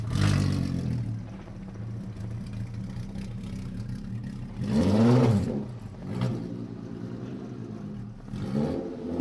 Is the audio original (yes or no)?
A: yes